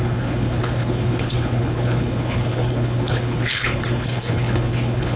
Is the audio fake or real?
fake